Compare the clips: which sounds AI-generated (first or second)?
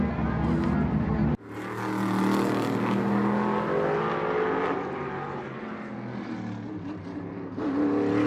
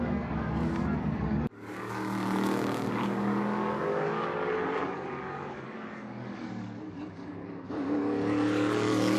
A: second